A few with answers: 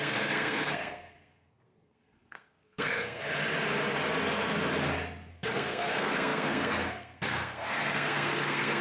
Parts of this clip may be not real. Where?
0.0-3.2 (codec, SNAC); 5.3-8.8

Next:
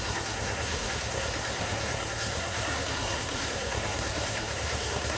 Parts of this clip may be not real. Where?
0.0-5.2 (codec, SNAC)